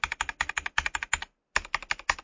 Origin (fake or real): real